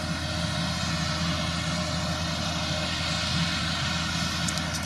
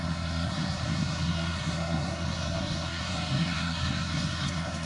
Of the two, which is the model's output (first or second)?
second